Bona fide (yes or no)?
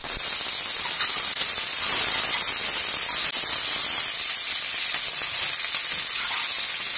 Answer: yes